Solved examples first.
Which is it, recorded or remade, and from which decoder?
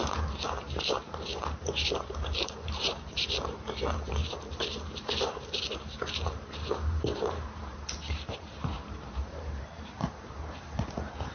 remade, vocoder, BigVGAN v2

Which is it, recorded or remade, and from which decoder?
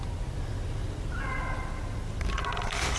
recorded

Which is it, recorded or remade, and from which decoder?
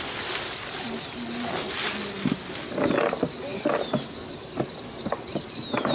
recorded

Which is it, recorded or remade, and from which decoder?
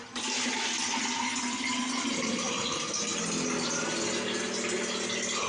recorded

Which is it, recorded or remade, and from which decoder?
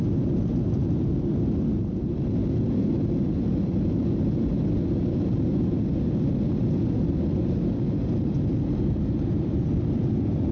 recorded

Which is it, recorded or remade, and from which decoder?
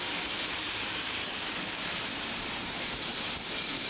remade, vocoder, BigVGAN v2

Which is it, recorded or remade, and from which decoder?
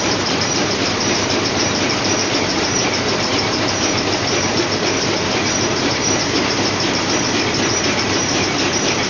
remade, vocoder, BigVGAN v2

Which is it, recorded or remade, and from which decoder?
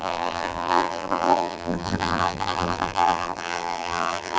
remade, vocoder, BigVGAN v2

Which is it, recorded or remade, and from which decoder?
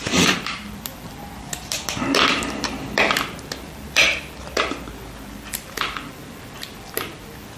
remade, vocoder, BigVGAN v2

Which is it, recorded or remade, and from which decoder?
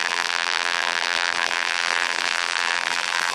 remade, vocoder, BigVGAN v2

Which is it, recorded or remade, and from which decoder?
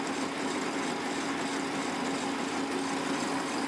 recorded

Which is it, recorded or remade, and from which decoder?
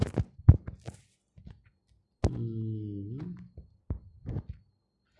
recorded